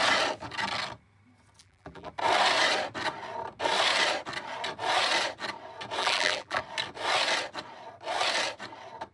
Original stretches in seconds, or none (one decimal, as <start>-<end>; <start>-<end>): 0.0-1.6; 2.1-6.0; 6.6-9.1